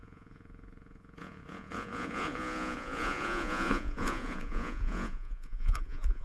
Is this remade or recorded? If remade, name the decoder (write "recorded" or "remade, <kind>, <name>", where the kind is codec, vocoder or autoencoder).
remade, vocoder, Vocos